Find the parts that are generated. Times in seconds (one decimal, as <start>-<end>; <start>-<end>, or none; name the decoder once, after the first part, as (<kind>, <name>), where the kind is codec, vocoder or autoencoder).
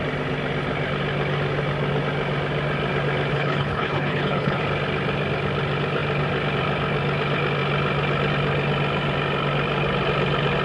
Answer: 3.3-4.6 (codec, HILCodec)